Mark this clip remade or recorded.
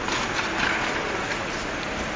recorded